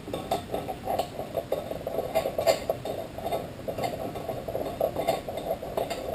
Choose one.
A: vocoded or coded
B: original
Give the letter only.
B